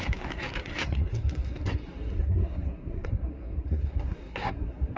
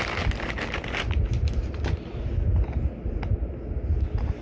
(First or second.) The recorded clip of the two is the second